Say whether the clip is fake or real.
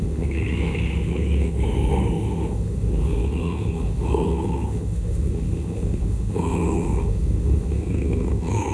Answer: fake